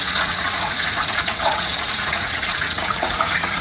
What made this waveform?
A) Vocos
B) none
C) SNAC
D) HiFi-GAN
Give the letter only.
A